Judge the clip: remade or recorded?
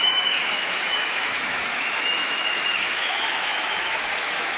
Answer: remade